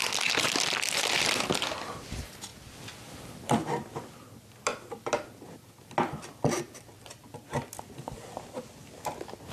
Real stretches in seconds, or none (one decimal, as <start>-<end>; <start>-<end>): 0.0-2.5; 3.7-4.7; 9.1-9.5